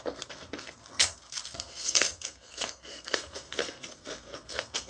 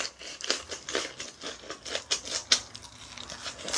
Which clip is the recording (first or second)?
second